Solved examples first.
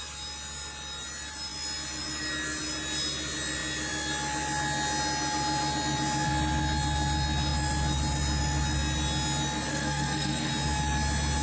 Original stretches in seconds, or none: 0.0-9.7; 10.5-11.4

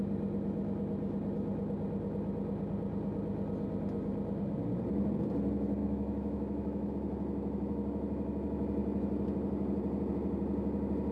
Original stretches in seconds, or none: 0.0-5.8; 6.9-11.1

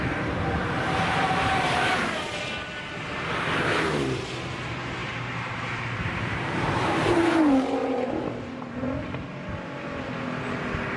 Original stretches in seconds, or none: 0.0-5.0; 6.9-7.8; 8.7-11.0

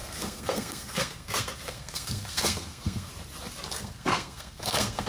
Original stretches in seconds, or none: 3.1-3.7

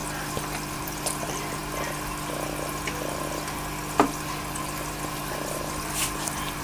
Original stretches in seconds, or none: 0.0-0.7; 1.6-5.2

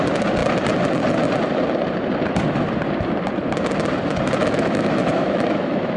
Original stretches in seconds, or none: 0.0-4.4

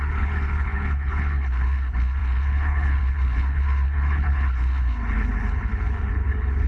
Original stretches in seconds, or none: none